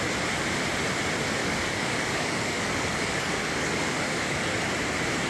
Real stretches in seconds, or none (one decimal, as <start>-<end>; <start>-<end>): 0.0-1.4; 4.6-5.3